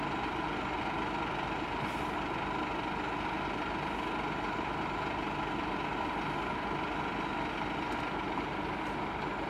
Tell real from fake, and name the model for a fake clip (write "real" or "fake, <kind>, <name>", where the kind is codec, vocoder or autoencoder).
real